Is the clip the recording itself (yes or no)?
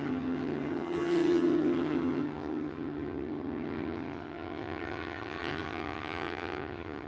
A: no